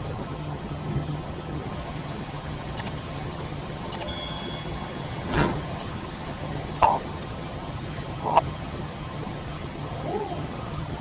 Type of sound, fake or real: fake